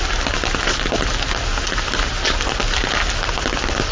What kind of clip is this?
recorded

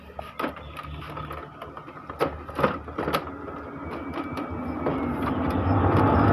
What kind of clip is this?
recorded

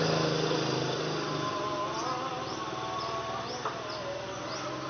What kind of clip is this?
recorded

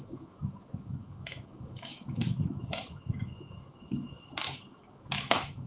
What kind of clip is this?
remade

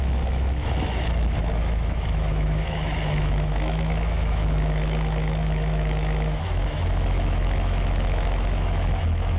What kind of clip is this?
remade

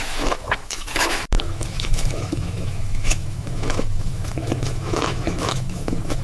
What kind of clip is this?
remade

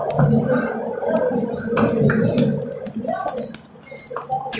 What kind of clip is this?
recorded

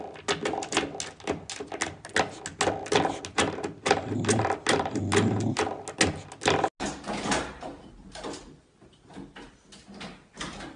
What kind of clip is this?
recorded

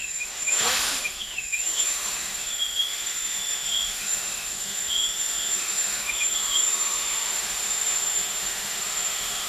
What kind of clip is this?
remade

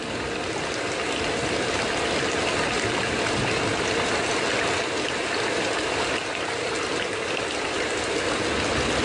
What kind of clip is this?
recorded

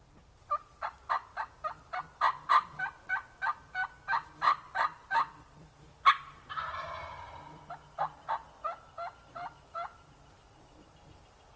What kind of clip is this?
recorded